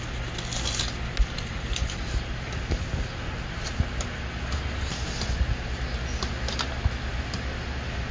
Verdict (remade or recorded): recorded